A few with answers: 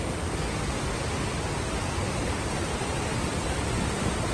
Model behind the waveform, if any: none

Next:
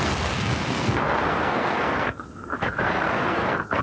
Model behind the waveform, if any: codec, SNAC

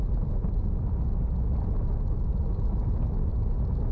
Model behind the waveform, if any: none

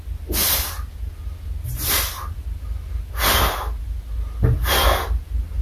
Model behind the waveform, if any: none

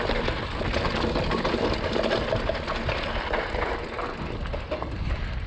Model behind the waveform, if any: none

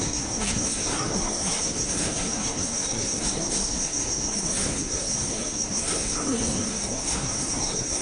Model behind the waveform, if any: codec, SNAC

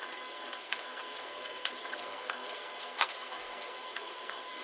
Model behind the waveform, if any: codec, SNAC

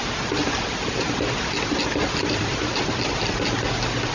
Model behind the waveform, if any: none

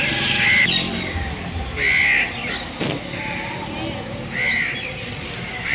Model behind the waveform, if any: none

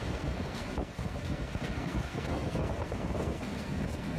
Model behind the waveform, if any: codec, SNAC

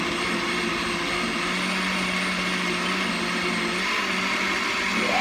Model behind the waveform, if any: none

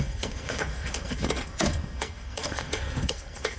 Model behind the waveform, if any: codec, SNAC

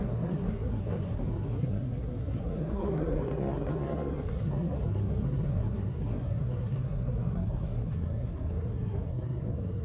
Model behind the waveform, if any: codec, SNAC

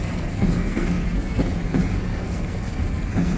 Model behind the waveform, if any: codec, SNAC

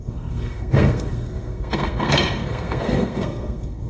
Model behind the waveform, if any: codec, SNAC